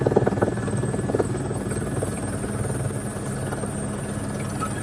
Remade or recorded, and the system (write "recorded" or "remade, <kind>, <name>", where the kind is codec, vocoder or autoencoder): recorded